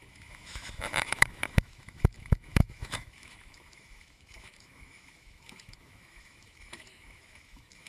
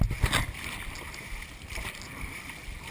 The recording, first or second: second